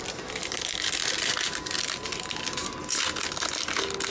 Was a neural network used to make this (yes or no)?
no